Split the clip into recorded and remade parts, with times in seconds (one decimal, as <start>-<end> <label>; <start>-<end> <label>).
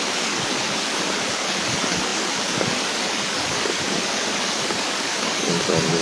0.0-6.0 remade